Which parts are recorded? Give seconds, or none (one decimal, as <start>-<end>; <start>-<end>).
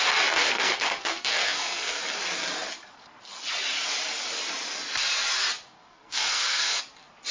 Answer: 0.0-0.4; 2.0-5.9; 6.8-7.3